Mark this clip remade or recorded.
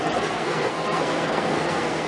remade